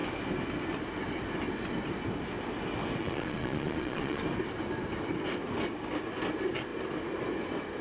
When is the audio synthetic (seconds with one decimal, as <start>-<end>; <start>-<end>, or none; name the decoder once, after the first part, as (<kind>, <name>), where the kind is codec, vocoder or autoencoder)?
3.0-4.2 (vocoder, Vocos)